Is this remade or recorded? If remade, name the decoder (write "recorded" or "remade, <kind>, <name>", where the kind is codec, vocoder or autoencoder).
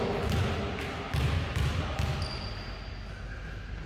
recorded